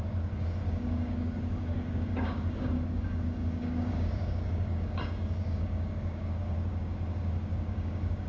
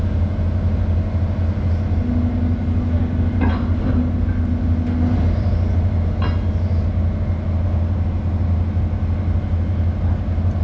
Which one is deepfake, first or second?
first